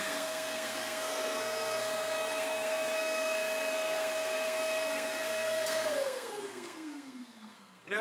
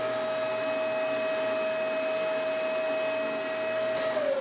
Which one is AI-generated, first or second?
first